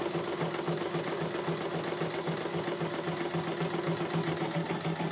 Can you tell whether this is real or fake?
real